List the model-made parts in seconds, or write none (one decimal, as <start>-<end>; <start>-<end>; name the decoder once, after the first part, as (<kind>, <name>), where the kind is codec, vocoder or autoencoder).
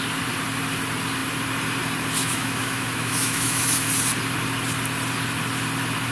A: 2.2-3.9 (autoencoder, DAC-VAE)